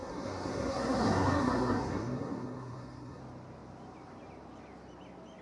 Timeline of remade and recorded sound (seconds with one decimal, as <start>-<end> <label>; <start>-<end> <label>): 0.0-3.2 remade; 3.2-5.4 recorded